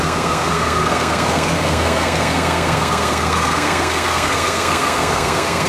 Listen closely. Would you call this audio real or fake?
fake